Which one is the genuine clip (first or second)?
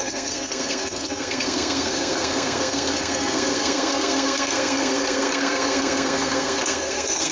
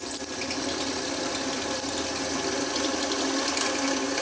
second